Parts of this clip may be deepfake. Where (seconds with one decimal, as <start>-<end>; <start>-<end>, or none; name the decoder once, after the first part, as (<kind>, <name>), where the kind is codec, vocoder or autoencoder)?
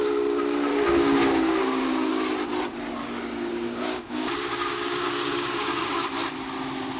0.7-2.1 (codec, DAC); 3.0-5.9